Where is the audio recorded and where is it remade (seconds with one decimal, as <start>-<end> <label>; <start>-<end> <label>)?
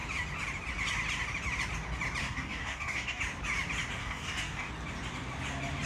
0.0-2.2 recorded; 2.2-3.2 remade; 3.2-4.0 recorded; 4.0-4.7 remade; 4.7-5.9 recorded